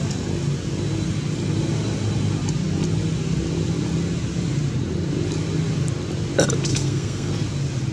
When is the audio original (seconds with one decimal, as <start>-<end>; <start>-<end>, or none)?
0.0-6.7; 7.3-7.9